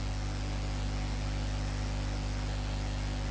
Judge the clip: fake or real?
real